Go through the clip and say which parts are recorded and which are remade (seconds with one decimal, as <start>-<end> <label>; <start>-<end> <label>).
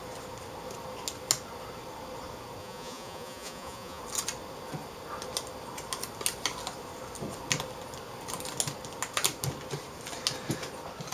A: 0.0-2.6 recorded; 2.6-4.0 remade; 4.0-11.1 recorded